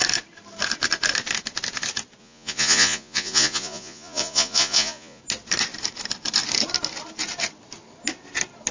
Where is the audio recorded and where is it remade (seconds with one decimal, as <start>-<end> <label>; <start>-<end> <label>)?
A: 0.0-2.2 recorded; 2.2-5.2 remade; 5.2-8.7 recorded